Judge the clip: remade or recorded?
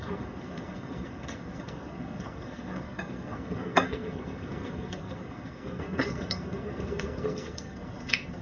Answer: remade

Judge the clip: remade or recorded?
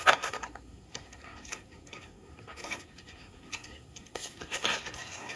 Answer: remade